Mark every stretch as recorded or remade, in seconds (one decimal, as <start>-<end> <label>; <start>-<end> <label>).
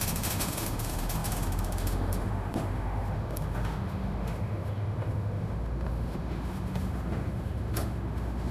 0.0-8.5 remade